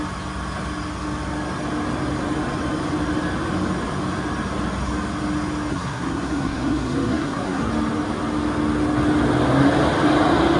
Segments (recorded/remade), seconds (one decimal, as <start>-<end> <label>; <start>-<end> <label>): 0.0-5.7 recorded; 5.7-7.7 remade; 7.7-10.6 recorded